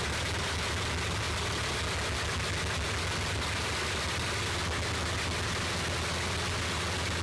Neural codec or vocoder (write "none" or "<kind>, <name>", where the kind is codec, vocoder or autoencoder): none